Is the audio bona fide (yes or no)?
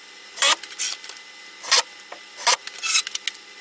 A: yes